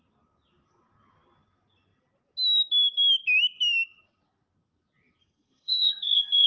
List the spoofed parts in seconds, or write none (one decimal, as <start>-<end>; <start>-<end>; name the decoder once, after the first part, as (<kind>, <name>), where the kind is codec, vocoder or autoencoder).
5.2-6.5 (codec, SNAC)